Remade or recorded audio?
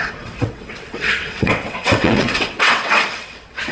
remade